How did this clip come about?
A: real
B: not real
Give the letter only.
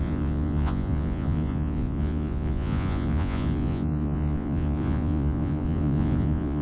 B